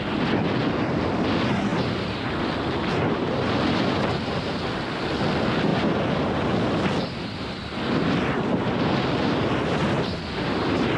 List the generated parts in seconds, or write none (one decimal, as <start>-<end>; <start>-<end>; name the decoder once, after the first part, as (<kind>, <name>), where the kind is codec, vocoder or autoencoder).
1.7-2.2 (vocoder, BigVGAN v2)